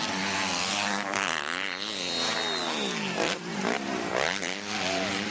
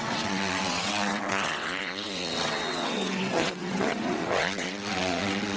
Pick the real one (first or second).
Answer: first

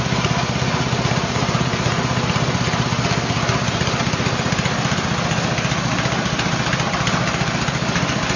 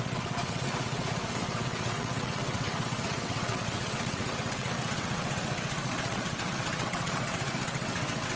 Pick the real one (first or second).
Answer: first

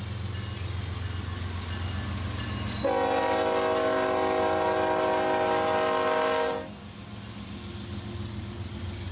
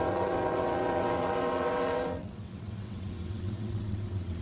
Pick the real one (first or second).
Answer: first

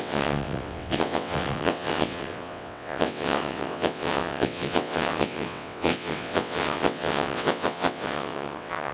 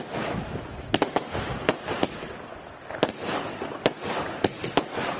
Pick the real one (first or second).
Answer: second